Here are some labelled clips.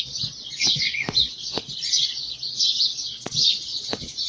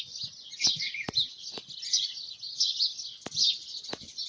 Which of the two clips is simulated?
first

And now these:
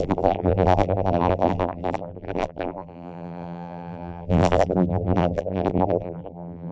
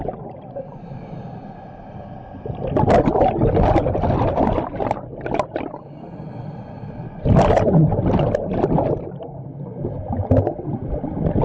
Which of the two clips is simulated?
first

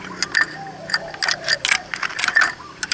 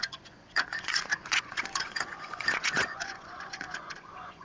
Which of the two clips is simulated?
second